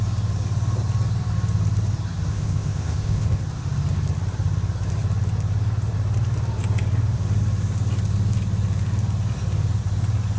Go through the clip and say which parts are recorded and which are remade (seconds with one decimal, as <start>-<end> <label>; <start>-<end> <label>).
0.0-2.3 recorded; 2.3-3.4 remade; 3.4-10.4 recorded